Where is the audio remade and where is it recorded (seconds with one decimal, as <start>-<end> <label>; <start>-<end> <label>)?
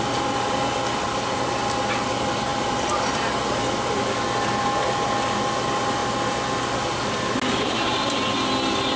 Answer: 0.0-9.0 recorded